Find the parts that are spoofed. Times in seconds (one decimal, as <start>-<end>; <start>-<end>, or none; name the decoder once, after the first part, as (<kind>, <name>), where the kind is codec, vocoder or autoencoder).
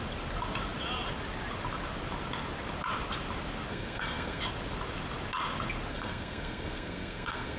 3.7-4.4 (codec, SNAC); 5.9-7.6